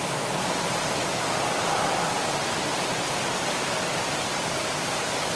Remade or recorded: recorded